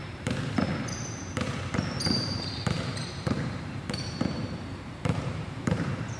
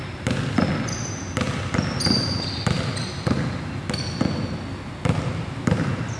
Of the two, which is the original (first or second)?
second